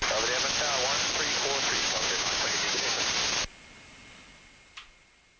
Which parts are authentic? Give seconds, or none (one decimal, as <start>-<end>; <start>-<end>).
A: 0.0-1.8; 3.0-5.4